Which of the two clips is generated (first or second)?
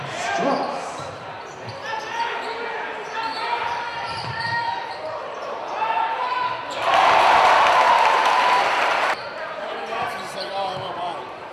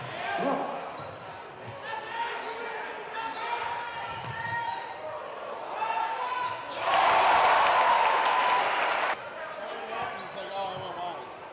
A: first